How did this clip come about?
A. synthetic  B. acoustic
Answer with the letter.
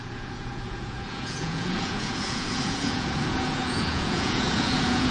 A